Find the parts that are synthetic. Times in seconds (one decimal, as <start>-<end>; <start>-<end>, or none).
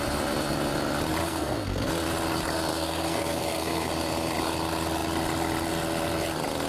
1.2-1.9; 2.7-3.9